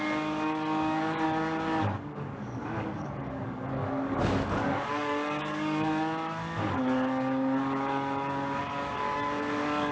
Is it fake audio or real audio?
fake